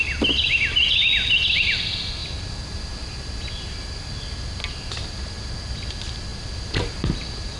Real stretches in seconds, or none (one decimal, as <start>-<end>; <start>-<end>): 0.0-7.6